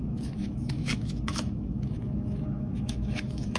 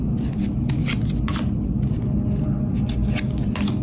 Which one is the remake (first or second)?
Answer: first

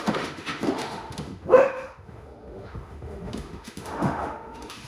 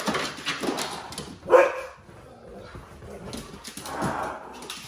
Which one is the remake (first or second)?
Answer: first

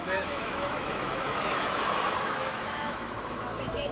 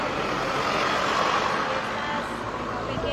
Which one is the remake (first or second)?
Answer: first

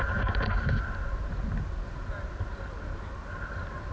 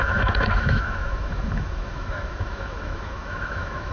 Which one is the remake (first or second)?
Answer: second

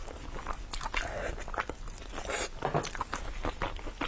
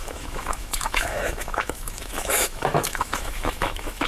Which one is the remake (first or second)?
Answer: second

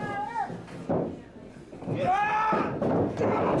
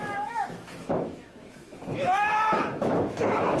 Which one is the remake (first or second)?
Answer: second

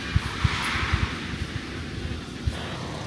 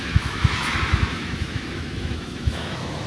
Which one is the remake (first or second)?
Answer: second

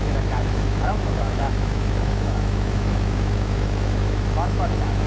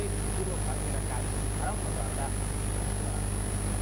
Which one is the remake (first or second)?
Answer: first